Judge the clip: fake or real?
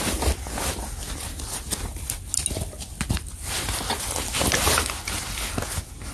real